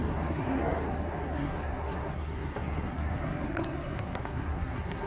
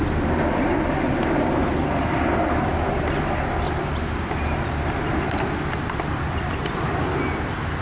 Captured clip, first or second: second